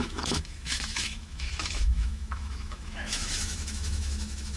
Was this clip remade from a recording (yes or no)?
yes